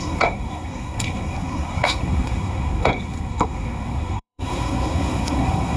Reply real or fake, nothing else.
fake